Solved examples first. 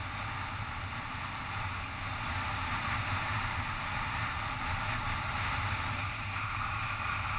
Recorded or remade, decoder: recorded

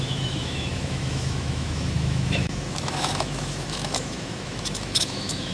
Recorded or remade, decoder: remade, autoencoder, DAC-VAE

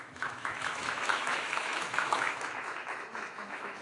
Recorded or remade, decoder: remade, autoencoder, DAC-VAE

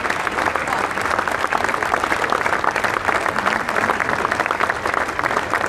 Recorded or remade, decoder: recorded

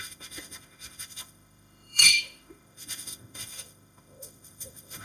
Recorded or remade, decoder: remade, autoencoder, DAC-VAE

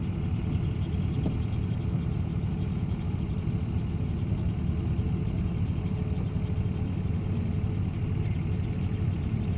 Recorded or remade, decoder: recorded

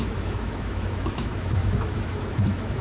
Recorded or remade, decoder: remade, autoencoder, DAC-VAE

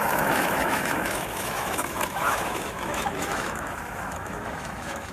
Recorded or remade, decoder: remade, autoencoder, DAC-VAE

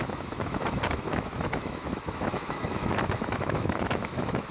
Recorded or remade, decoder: remade, autoencoder, DAC-VAE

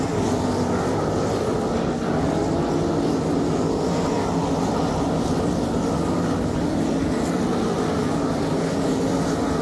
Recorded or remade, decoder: recorded